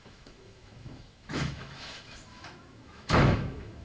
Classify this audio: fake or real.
fake